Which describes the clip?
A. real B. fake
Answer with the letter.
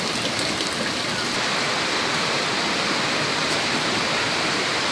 A